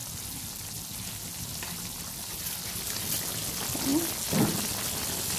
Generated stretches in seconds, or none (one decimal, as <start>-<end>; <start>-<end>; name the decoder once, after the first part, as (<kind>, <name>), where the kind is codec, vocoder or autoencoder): none